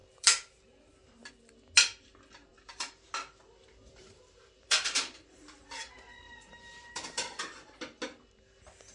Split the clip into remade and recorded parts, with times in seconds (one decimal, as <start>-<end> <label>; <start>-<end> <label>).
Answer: 0.0-1.3 remade; 1.3-2.5 recorded; 2.5-3.1 remade; 3.1-3.9 recorded; 3.9-7.7 remade; 7.7-8.9 recorded